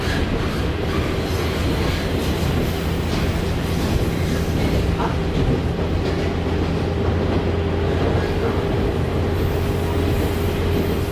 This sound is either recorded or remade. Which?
recorded